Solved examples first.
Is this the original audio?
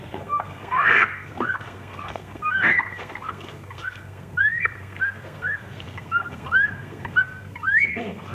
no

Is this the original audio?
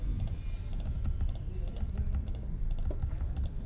yes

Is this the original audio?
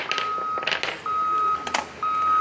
yes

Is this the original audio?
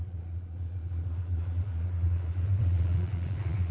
no